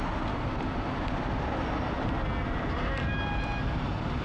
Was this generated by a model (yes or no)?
no